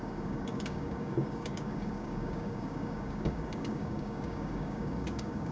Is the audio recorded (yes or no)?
no